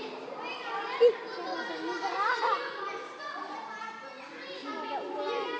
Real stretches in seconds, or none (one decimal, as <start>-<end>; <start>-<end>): 0.0-5.6